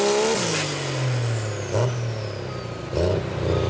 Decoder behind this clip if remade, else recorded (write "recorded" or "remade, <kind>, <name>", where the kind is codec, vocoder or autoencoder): recorded